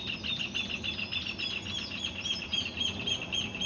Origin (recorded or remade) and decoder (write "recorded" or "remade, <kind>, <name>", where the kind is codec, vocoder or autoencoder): recorded